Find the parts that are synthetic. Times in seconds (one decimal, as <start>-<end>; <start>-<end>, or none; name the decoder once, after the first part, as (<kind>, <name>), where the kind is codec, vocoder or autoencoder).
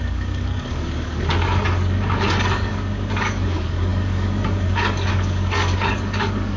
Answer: 0.0-6.6 (codec, DAC)